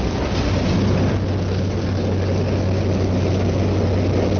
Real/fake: real